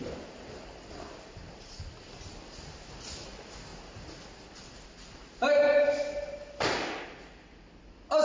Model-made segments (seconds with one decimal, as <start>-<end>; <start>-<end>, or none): none